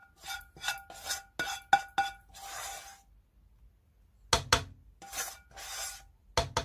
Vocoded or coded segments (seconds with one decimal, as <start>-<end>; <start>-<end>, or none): none